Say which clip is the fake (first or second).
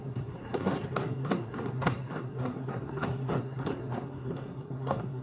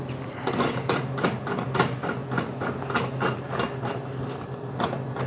first